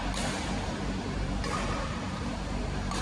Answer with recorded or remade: remade